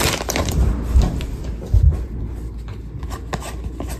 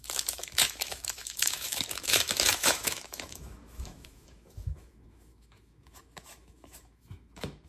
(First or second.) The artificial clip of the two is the second